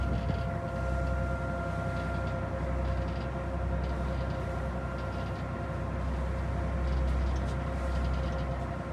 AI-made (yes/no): no